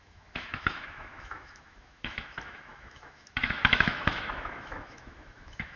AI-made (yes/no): yes